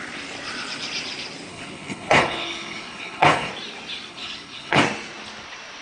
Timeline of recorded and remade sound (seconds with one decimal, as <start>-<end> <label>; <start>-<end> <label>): 0.0-1.5 recorded; 1.5-3.5 remade; 3.5-4.1 recorded; 4.1-4.8 remade; 4.8-5.8 recorded

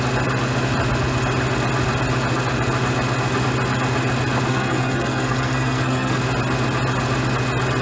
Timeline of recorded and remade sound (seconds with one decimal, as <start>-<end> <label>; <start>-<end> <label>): 0.0-4.5 recorded; 4.5-6.2 remade; 6.2-7.8 recorded

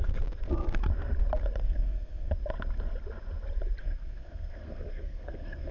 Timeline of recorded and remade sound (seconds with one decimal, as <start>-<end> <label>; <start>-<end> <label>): 0.0-1.6 recorded; 1.6-2.3 remade; 2.3-3.8 recorded; 3.8-5.7 remade

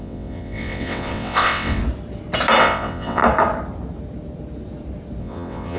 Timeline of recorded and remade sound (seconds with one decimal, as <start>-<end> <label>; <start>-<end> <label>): 0.0-1.8 remade; 1.8-2.6 recorded; 2.6-3.2 remade; 3.2-5.2 recorded; 5.2-5.8 remade

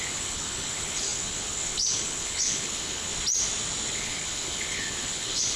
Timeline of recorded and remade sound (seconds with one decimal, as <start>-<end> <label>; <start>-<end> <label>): 0.0-3.1 remade; 3.1-3.9 recorded; 3.9-5.6 remade

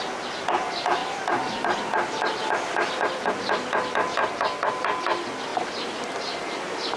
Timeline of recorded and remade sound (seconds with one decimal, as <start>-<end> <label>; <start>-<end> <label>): 0.0-1.0 recorded; 1.0-1.9 remade; 1.9-5.5 recorded; 5.5-7.0 remade

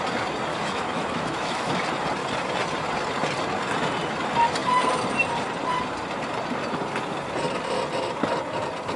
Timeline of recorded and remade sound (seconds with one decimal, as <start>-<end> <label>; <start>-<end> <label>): 0.0-0.5 recorded; 0.5-1.7 remade; 1.7-9.0 recorded

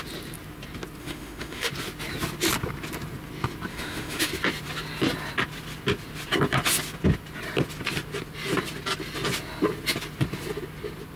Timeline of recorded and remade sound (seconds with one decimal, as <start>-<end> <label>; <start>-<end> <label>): 0.0-1.0 recorded; 1.0-1.7 remade; 1.7-3.7 recorded; 3.7-4.3 remade; 4.3-11.2 recorded